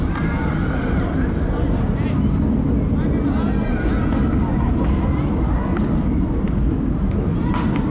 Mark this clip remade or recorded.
recorded